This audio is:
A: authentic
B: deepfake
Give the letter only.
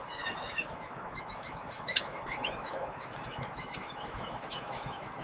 B